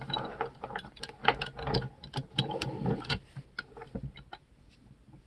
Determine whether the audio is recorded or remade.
recorded